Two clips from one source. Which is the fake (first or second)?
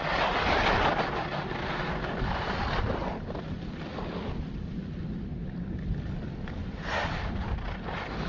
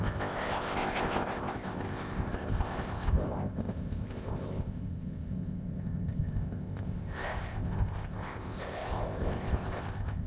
second